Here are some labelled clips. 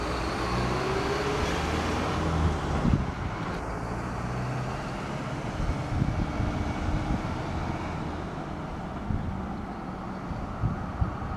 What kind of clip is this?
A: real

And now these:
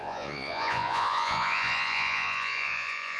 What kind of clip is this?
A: fake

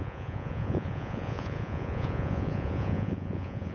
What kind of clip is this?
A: fake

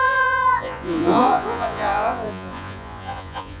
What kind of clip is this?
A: fake